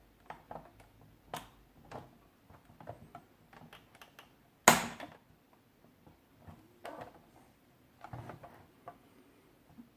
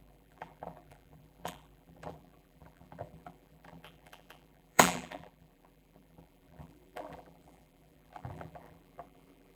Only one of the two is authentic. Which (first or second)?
first